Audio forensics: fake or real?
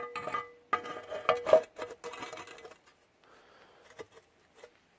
real